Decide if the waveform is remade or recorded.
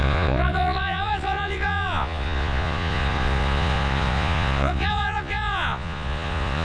remade